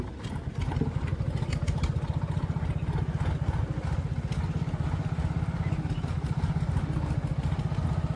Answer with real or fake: real